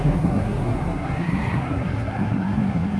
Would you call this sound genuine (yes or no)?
no